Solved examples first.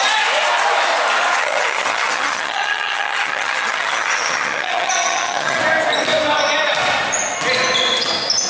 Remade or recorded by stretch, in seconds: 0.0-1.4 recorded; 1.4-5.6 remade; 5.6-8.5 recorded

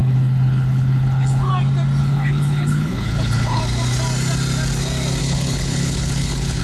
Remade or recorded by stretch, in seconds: 0.0-1.5 remade; 1.5-2.0 recorded; 2.0-3.6 remade; 3.6-5.2 recorded; 5.2-6.6 remade

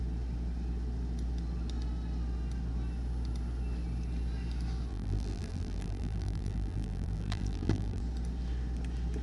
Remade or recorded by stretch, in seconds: 0.0-4.9 recorded; 4.9-8.0 remade; 8.0-9.2 recorded

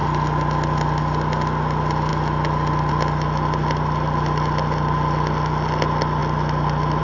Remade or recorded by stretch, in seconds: 0.0-7.0 recorded

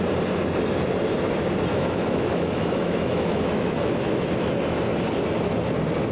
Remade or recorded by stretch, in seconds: 0.0-1.7 recorded; 1.7-4.3 remade; 4.3-6.1 recorded

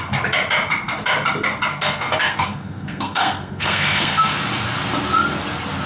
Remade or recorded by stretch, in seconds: 0.0-1.7 recorded; 1.7-4.3 remade; 4.3-5.9 recorded

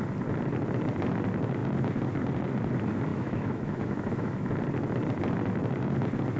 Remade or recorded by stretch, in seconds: 0.0-3.1 recorded; 3.1-4.5 remade; 4.5-6.4 recorded

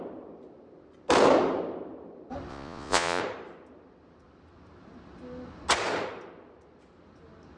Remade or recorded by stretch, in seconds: 0.0-2.5 recorded; 2.5-3.2 remade; 3.2-7.6 recorded